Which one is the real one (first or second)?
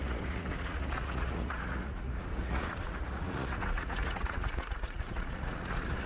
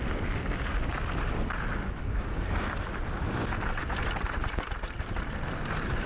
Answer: second